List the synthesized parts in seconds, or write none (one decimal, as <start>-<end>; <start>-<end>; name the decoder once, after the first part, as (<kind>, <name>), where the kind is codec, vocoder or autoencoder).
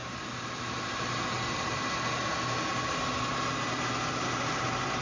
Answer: none